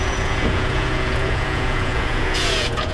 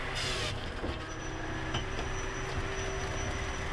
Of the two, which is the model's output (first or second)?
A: first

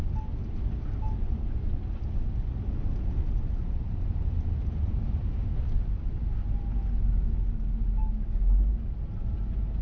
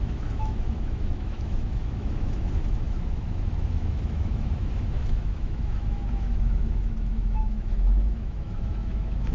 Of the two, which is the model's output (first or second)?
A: second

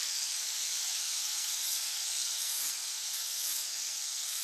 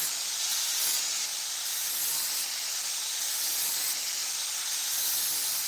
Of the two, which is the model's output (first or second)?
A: first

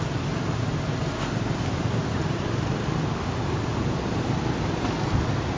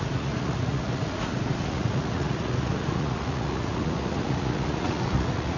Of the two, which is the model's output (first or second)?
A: second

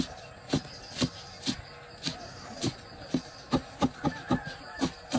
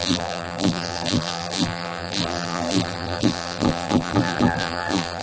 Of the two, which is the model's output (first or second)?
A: second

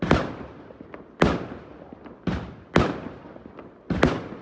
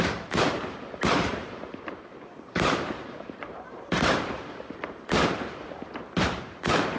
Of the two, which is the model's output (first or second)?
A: second